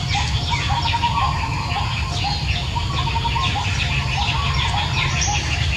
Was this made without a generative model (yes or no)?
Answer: yes